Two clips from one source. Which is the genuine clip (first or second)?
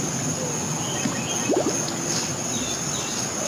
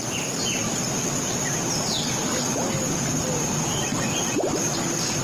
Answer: first